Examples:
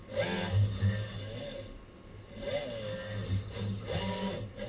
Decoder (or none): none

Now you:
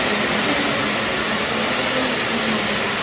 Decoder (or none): none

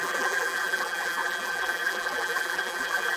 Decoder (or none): vocoder, BigVGAN v2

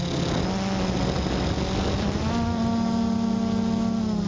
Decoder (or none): none